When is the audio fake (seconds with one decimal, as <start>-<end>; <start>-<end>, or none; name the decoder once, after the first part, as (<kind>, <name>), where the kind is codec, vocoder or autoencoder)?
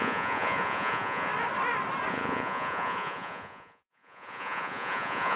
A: 0.0-1.3 (vocoder, Vocos); 2.1-5.4